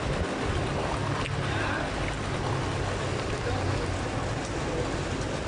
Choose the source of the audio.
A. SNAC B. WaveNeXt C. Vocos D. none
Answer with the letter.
D